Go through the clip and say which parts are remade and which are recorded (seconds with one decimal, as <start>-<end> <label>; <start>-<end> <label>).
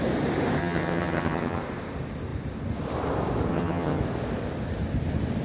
0.0-0.6 recorded; 0.6-1.6 remade; 1.6-3.5 recorded; 3.5-4.0 remade; 4.0-5.4 recorded